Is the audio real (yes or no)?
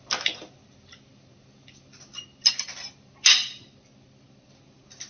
yes